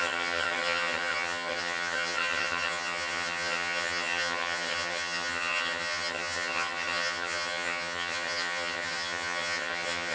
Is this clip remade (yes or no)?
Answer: yes